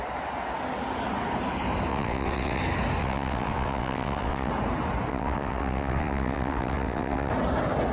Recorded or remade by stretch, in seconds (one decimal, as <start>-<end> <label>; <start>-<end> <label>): 0.0-1.9 recorded; 1.9-2.6 remade; 2.6-3.0 recorded; 3.0-4.5 remade; 4.5-5.1 recorded; 5.1-7.3 remade; 7.3-7.9 recorded